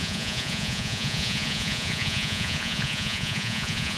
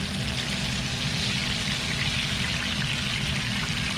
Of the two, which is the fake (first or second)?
first